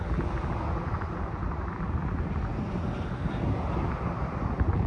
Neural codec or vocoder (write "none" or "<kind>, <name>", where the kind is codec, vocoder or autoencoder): none